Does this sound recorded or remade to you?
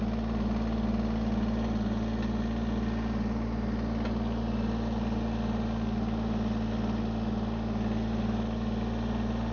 recorded